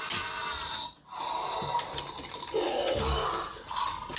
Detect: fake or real real